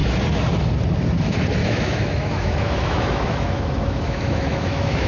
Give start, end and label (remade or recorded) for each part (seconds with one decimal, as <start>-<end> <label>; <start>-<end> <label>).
0.0-1.6 recorded; 1.6-5.1 remade